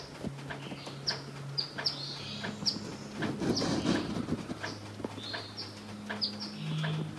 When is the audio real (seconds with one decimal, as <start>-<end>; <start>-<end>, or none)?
0.0-7.2